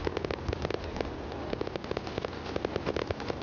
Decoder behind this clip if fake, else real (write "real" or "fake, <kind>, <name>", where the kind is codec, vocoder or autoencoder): real